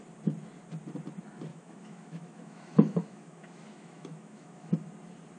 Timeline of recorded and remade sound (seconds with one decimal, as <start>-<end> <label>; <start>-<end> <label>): 0.0-1.5 recorded; 1.5-4.7 remade; 4.7-5.4 recorded